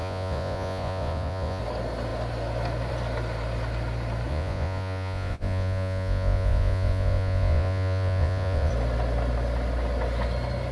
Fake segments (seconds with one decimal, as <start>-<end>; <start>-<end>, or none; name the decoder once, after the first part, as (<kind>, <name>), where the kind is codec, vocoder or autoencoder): 0.0-1.6 (vocoder, Vocos); 4.3-8.7